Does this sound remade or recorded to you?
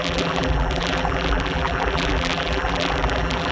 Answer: remade